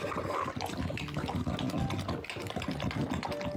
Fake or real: real